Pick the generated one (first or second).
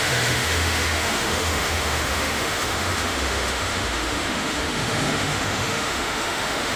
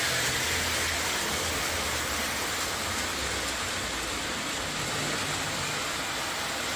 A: first